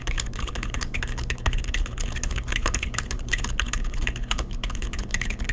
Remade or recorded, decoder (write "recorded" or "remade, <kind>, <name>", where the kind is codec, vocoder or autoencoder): remade, codec, HILCodec